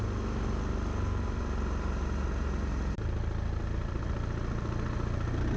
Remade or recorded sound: recorded